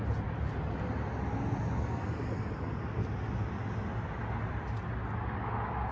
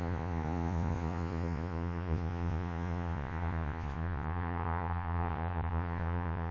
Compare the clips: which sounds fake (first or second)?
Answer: second